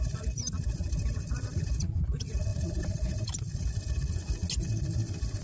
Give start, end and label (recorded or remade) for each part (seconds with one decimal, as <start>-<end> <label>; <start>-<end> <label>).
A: 0.0-2.5 recorded; 2.5-3.6 remade; 3.6-5.4 recorded